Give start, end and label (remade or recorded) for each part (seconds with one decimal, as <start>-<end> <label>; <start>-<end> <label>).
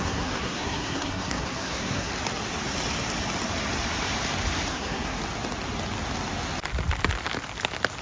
0.0-2.1 remade; 2.1-4.7 recorded; 4.7-5.2 remade; 5.2-8.0 recorded